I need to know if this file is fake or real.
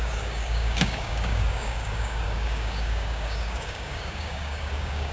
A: fake